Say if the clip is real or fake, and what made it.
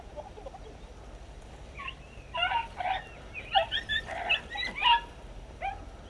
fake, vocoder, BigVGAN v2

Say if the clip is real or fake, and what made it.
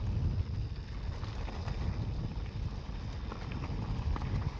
real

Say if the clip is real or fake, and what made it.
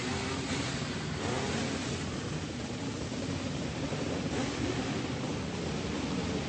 real